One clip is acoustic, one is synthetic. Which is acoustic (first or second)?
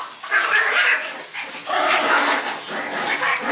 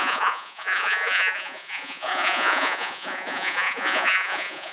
first